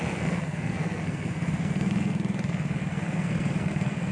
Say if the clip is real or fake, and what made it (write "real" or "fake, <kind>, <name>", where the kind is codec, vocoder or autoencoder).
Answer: fake, codec, SNAC